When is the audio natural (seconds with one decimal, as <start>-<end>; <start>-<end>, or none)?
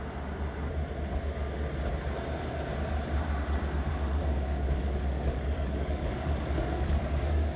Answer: 0.0-3.9